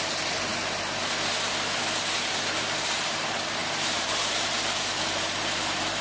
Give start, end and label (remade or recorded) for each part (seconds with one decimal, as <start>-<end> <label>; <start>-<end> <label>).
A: 0.0-0.5 remade; 0.5-2.9 recorded; 2.9-6.0 remade